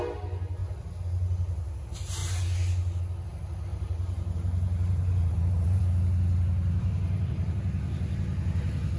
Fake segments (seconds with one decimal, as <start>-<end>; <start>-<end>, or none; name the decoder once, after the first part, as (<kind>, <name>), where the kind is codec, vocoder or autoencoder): 3.7-5.8 (vocoder, BigVGAN v2); 6.8-7.6

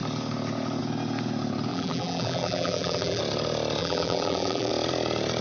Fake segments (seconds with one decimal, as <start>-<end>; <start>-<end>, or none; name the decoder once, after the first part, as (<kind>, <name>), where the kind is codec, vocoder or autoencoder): 1.7-3.2 (vocoder, BigVGAN v2); 3.8-4.7